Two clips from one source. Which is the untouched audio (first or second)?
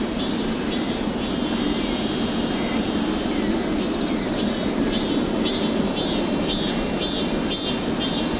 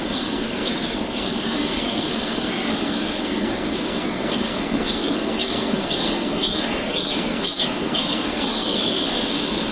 first